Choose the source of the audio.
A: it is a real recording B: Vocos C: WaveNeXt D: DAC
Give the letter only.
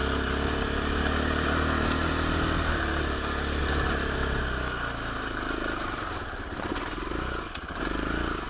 A